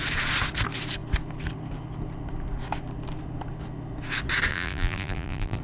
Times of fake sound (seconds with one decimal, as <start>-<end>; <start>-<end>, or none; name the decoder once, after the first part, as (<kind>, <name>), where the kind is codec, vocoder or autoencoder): 4.5-5.6 (vocoder, BigVGAN v2)